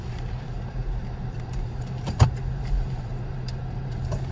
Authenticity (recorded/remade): remade